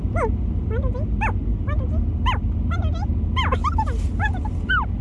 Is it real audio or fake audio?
real